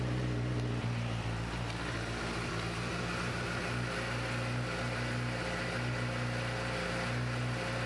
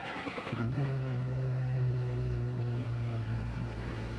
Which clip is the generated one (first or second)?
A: second